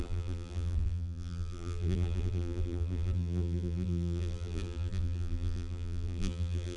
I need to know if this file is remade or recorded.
remade